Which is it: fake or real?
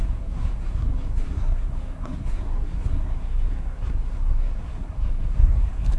fake